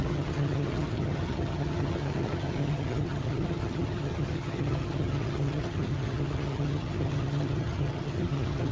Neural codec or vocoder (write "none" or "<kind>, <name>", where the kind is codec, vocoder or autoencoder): vocoder, HiFi-GAN